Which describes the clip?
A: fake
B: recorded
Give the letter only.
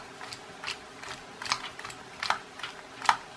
B